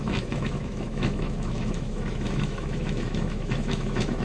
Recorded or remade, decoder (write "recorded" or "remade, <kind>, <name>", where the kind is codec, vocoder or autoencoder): remade, autoencoder, DAC-VAE